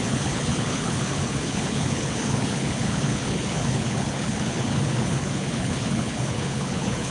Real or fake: fake